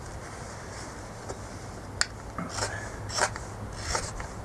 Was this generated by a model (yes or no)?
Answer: no